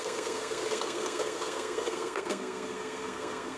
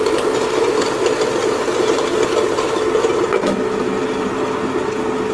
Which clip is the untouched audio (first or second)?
second